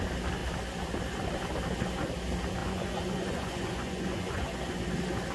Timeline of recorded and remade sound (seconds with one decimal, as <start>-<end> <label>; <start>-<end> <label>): 0.0-2.6 recorded; 2.6-4.6 remade; 4.6-5.3 recorded